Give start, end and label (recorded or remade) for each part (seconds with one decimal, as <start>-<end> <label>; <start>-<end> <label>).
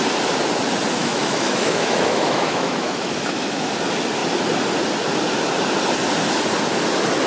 0.0-1.0 recorded; 1.0-3.7 remade; 3.7-7.3 recorded